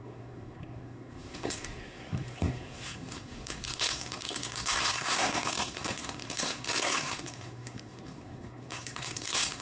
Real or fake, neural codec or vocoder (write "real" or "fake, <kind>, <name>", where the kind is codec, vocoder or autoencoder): fake, codec, SNAC